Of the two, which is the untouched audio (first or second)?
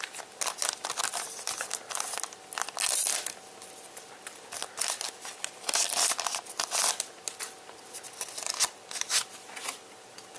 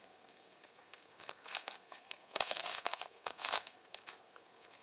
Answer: first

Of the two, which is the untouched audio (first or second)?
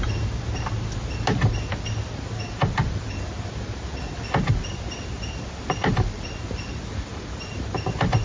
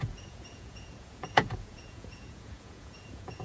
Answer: first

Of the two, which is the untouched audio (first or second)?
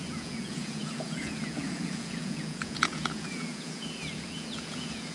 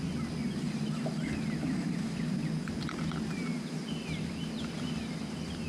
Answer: second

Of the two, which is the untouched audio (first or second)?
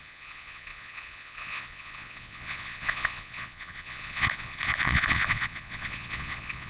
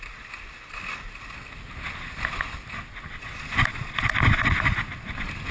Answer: second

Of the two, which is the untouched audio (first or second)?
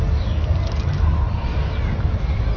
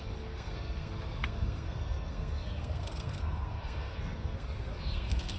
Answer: first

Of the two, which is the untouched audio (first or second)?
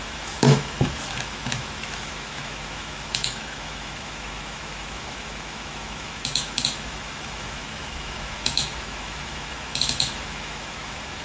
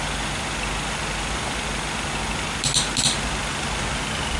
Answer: second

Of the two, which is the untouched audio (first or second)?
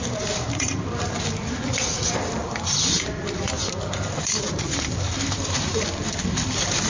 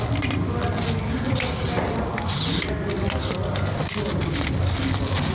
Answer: second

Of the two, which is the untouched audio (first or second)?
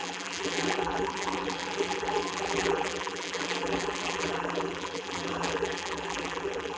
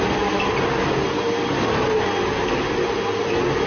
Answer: second